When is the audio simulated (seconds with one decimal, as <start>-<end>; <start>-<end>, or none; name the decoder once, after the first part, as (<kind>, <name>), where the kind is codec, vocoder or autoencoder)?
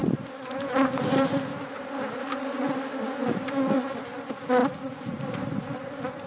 4.6-5.2 (vocoder, Vocos)